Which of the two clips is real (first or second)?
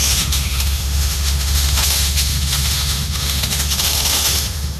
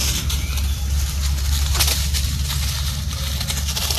second